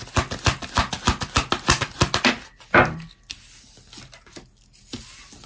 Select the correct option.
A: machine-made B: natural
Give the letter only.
B